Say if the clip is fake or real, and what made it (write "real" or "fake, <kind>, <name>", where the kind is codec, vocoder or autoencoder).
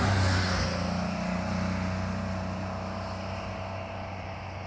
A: real